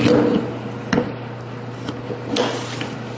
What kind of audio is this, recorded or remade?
recorded